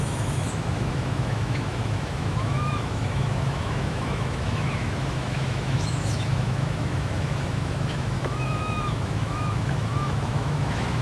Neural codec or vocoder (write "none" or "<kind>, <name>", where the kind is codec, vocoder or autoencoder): autoencoder, DAC-VAE